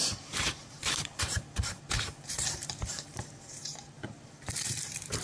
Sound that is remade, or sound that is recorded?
remade